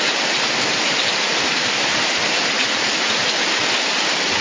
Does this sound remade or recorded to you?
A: recorded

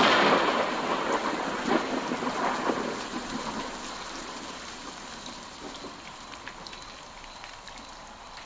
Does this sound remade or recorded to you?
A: recorded